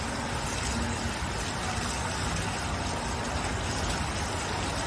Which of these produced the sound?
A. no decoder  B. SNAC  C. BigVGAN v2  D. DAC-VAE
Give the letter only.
A